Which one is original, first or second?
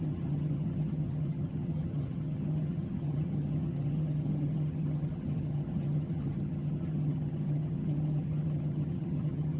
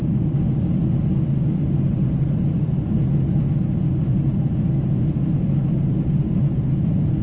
second